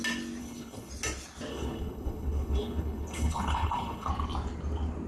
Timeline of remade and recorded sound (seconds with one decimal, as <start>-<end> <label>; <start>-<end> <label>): 0.0-0.4 recorded; 0.4-0.9 remade; 0.9-1.5 recorded; 1.5-4.1 remade; 4.1-5.1 recorded